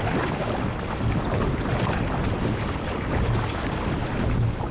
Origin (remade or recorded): recorded